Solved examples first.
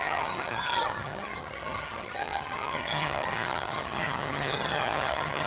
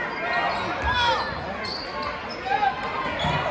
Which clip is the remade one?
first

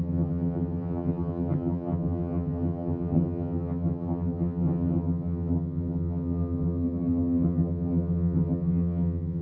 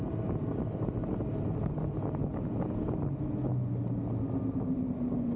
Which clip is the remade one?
first